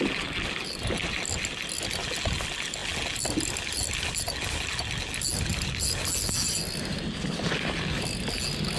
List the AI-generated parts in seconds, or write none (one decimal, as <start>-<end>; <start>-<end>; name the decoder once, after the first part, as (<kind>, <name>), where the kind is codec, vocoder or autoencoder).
none